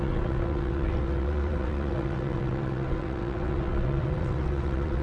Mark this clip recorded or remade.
remade